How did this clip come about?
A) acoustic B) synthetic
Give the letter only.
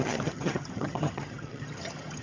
B